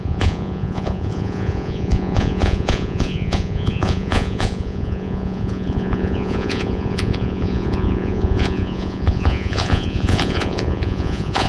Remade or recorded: remade